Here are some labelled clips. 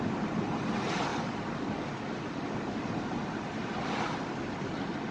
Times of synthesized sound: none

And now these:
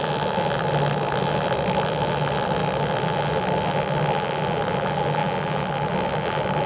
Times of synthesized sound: none

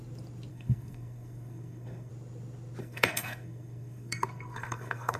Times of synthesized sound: 0.5-2.1 (codec, SNAC); 2.8-5.2